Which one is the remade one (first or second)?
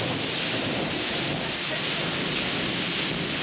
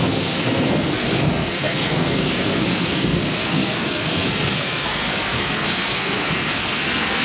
second